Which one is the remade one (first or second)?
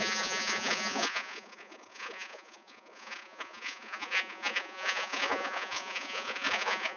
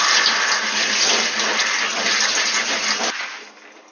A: first